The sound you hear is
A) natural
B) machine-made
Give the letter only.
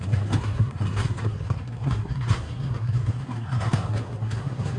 B